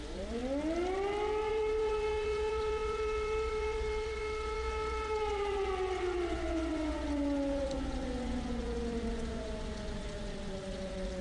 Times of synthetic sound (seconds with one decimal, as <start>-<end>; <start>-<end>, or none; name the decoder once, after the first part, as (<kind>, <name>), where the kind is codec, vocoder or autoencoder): 0.0-0.4 (vocoder, Vocos); 1.5-11.2